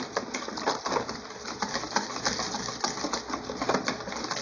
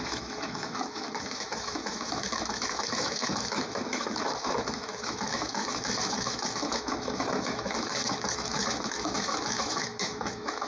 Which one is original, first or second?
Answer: first